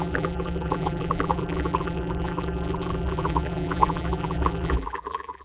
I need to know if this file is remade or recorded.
remade